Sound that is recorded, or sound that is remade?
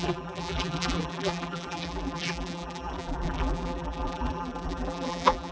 remade